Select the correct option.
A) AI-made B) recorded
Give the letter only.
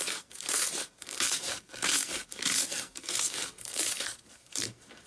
A